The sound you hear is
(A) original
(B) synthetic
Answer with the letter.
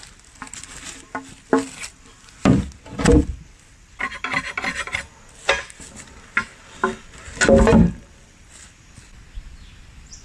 A